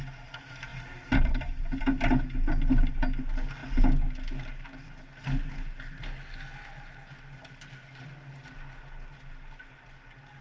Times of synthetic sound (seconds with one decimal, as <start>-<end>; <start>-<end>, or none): 0.7-1.8